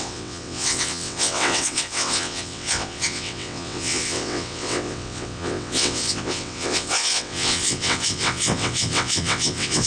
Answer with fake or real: fake